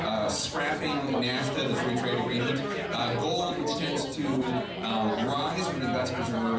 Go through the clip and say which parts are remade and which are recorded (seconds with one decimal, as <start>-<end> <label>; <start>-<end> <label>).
0.0-6.6 recorded